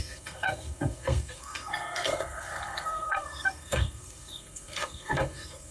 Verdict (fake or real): fake